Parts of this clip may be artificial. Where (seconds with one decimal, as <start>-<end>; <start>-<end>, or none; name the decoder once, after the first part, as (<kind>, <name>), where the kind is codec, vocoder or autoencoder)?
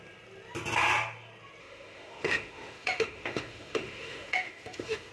1.6-5.1 (autoencoder, DAC-VAE)